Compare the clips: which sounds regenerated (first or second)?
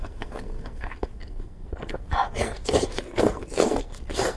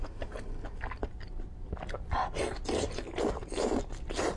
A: first